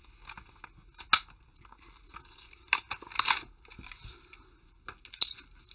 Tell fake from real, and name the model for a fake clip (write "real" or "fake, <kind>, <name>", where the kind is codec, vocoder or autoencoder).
real